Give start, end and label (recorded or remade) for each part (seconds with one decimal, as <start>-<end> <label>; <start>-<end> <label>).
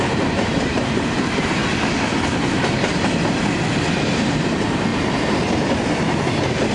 0.0-1.6 remade; 1.6-4.3 recorded; 4.3-4.9 remade; 4.9-6.3 recorded; 6.3-6.7 remade